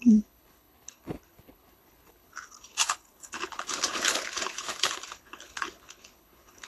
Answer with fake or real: fake